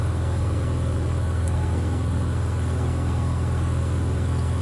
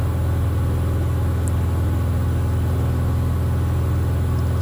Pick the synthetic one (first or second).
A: first